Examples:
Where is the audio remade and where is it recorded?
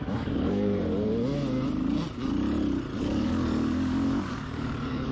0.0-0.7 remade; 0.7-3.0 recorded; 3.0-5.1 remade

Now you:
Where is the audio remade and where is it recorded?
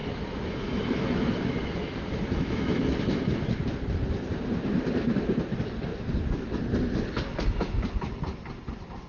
0.0-3.5 remade; 3.5-9.1 recorded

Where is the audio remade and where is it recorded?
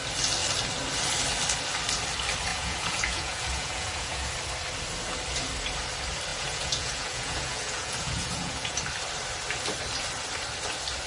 0.0-2.5 recorded; 2.5-4.3 remade; 4.3-6.3 recorded; 6.3-8.8 remade; 8.8-11.1 recorded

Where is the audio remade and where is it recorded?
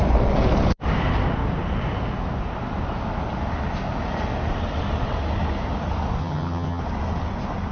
0.0-6.2 recorded; 6.2-6.8 remade; 6.8-7.7 recorded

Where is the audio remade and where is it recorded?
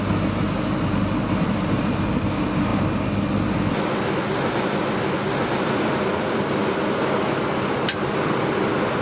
0.0-9.0 recorded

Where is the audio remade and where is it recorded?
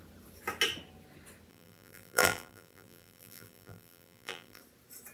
0.0-1.5 recorded; 1.5-4.6 remade; 4.6-5.1 recorded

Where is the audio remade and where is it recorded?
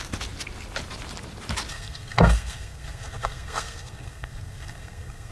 0.0-1.7 recorded; 1.7-5.3 remade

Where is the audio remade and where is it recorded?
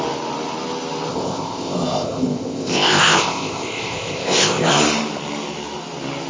0.0-1.1 recorded; 1.1-4.7 remade; 4.7-6.3 recorded